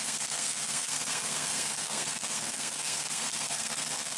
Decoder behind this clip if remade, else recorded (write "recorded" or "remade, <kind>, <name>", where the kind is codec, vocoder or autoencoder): remade, codec, SNAC